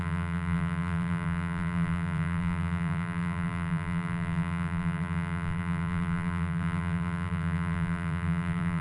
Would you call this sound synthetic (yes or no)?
yes